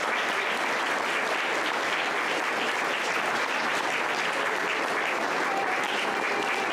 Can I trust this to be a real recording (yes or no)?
yes